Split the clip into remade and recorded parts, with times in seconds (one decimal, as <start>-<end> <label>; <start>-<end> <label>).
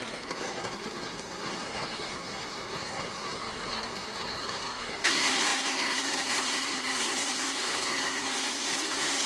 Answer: 0.0-9.3 remade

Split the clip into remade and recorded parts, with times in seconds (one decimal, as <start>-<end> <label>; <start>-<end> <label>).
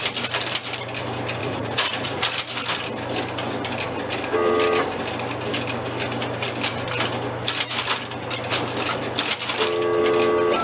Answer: 0.0-1.4 recorded; 1.4-2.2 remade; 2.2-10.6 recorded